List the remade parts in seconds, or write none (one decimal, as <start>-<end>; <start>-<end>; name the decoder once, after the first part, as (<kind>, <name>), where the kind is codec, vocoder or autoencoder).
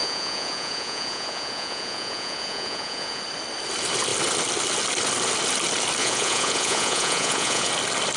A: 0.0-3.2 (vocoder, Vocos); 6.0-7.7